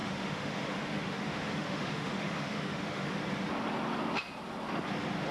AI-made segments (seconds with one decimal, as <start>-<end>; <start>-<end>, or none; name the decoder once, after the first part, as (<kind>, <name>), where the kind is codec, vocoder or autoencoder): 0.0-3.2 (autoencoder, DAC-VAE)